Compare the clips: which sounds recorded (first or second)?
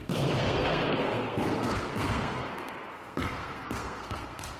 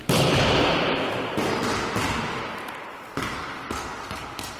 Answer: second